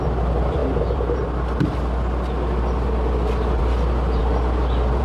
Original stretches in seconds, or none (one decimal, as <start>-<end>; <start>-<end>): 0.0-5.0